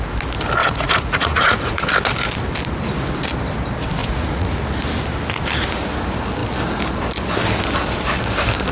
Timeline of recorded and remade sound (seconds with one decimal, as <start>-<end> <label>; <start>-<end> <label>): 0.0-0.6 recorded; 0.6-1.9 remade; 1.9-4.0 recorded; 4.0-4.6 remade; 4.6-8.7 recorded